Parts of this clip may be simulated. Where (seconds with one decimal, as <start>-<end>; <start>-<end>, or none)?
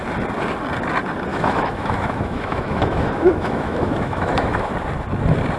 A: 1.3-4.7